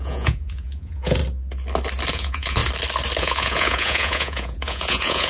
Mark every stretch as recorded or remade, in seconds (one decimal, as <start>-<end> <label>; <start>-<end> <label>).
0.0-1.2 remade; 1.2-2.1 recorded; 2.1-2.6 remade; 2.6-3.2 recorded; 3.2-5.3 remade